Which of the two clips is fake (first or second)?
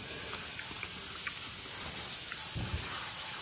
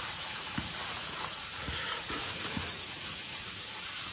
second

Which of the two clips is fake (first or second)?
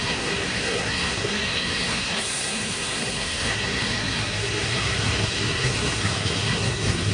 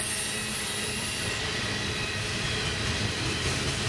first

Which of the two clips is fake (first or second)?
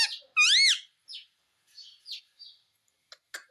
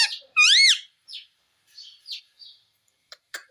second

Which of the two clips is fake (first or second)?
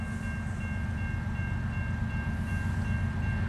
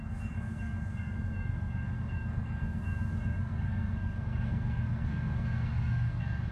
second